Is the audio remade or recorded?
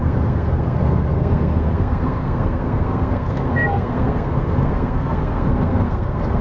remade